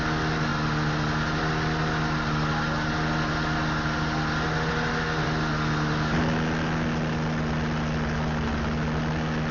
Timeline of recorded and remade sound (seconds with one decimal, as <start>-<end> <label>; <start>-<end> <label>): 0.0-9.5 recorded